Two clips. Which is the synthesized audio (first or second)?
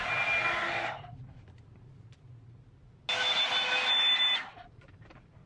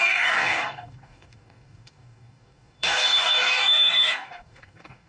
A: second